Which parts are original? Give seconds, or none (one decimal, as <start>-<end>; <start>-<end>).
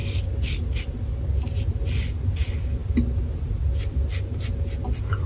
0.0-5.3